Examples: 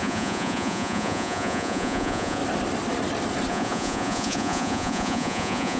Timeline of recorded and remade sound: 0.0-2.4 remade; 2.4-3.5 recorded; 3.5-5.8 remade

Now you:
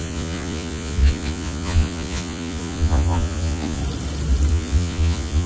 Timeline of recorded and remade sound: 0.0-3.8 remade; 3.8-4.5 recorded; 4.5-5.5 remade

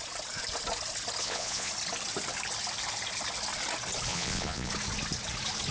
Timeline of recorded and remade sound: 0.0-1.2 recorded; 1.2-1.7 remade; 1.7-4.1 recorded; 4.1-4.7 remade; 4.7-5.7 recorded